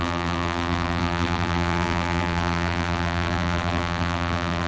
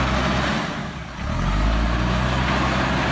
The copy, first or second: first